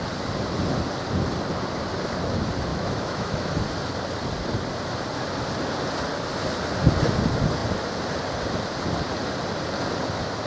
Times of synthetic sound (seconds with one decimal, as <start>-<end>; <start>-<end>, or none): 2.7-3.5